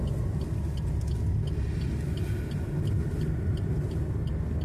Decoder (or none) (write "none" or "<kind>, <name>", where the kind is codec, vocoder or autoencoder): none